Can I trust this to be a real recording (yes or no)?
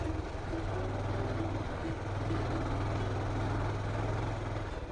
yes